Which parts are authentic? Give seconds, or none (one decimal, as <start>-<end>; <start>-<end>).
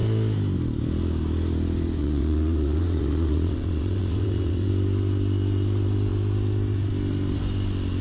0.0-2.0; 4.7-8.0